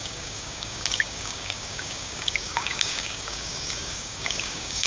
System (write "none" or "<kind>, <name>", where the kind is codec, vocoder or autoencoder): codec, DAC